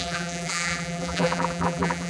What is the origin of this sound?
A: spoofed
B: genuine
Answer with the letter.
A